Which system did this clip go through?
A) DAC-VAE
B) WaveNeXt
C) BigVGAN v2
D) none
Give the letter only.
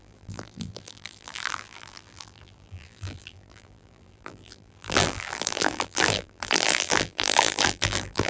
C